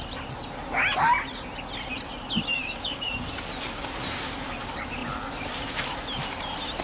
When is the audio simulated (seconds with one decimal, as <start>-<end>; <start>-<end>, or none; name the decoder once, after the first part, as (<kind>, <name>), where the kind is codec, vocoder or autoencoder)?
2.5-3.1 (codec, DAC)